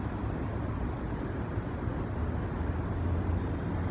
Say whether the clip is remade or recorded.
recorded